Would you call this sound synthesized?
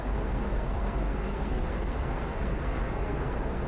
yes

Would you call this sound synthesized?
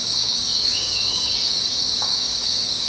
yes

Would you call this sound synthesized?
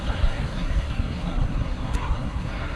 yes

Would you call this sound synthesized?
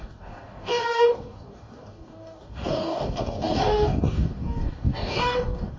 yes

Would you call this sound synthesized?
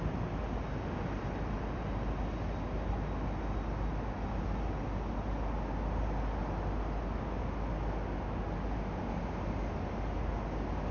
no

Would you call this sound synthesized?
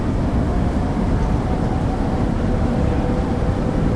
no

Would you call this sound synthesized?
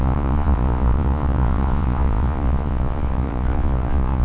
yes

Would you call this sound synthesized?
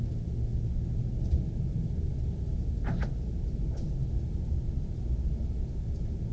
no